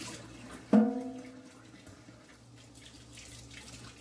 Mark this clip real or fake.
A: real